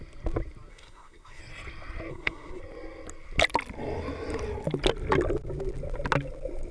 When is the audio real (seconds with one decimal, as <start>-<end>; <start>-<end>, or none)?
0.0-0.7; 1.4-2.1; 2.6-6.7